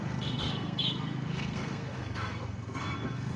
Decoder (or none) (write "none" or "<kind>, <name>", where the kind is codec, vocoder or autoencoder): codec, SNAC